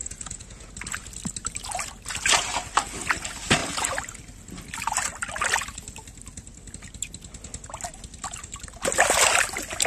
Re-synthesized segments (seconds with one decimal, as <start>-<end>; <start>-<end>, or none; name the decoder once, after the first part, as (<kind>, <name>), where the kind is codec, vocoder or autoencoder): 0.0-0.7 (vocoder, Vocos)